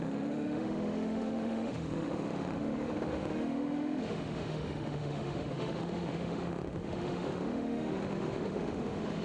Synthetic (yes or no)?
yes